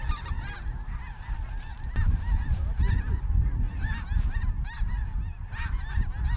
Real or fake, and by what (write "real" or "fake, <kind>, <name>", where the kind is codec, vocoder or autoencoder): real